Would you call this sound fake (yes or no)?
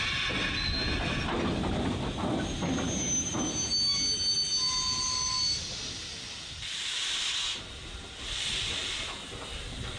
no